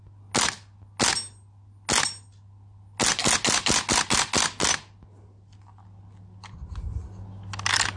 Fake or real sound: real